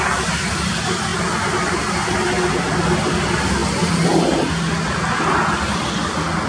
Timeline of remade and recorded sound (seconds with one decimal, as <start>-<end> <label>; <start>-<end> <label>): 0.0-6.5 recorded